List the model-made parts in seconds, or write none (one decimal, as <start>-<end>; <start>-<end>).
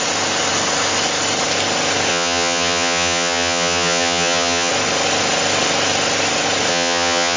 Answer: 2.1-4.7; 6.7-7.4